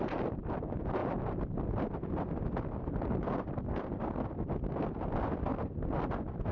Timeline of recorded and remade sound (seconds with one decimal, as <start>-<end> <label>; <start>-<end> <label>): 0.0-1.0 remade; 1.0-4.9 recorded; 4.9-5.5 remade; 5.5-6.5 recorded